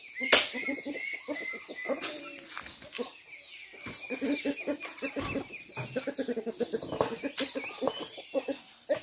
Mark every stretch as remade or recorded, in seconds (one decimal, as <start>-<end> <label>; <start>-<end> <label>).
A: 0.0-9.0 recorded